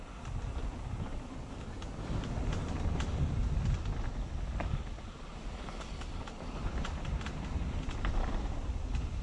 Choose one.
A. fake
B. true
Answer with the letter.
A